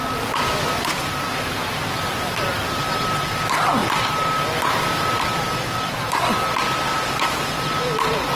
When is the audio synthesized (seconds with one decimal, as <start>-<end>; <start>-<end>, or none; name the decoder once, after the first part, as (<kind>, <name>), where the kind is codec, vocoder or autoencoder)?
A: 0.0-3.8 (vocoder, BigVGAN v2); 5.2-8.4